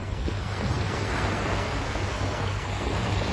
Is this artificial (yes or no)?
yes